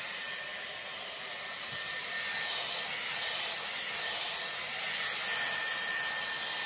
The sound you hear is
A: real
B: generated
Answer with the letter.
A